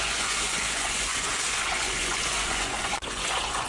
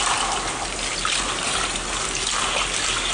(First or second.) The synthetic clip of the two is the first